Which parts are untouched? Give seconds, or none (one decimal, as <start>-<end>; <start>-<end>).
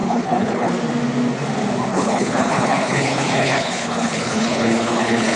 0.7-1.9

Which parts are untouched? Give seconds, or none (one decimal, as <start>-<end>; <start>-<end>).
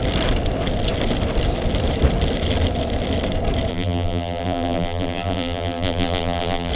0.0-3.7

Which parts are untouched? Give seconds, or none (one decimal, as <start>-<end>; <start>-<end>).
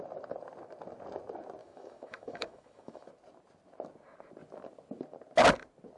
0.0-1.6; 3.1-6.0